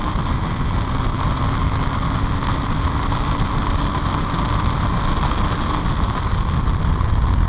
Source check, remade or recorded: recorded